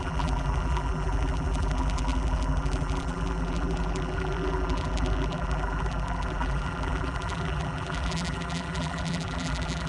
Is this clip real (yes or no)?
no